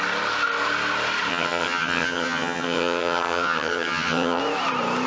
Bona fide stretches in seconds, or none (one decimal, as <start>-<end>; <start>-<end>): 0.0-1.3; 4.4-5.1